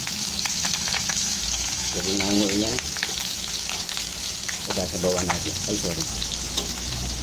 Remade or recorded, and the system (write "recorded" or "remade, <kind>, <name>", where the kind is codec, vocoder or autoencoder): remade, autoencoder, DAC-VAE